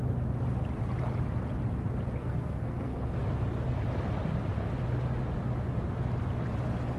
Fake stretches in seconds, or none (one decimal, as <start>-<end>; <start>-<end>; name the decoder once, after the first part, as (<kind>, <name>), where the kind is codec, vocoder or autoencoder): 2.2-3.2 (codec, SNAC)